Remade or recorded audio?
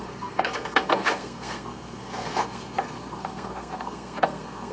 remade